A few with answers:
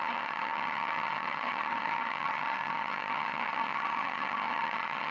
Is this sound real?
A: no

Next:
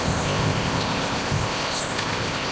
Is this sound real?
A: no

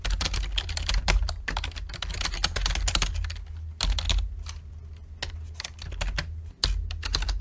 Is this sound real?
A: yes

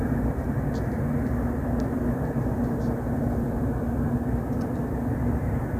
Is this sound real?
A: yes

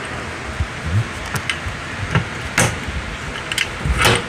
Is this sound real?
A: yes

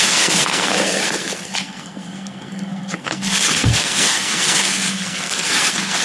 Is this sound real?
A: no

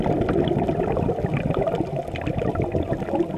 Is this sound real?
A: yes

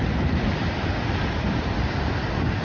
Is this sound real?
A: no